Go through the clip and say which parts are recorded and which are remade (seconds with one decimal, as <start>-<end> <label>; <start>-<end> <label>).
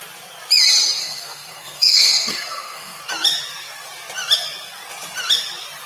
0.0-1.0 recorded; 1.0-3.0 remade; 3.0-5.9 recorded